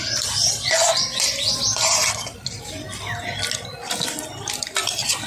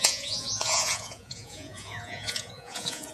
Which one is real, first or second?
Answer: first